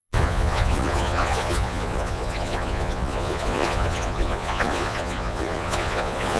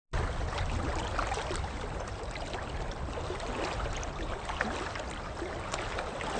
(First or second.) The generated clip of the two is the first